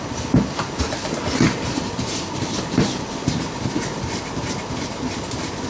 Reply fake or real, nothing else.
real